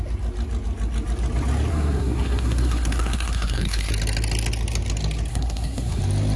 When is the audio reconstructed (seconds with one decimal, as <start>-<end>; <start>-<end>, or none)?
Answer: 1.7-3.9; 5.3-6.0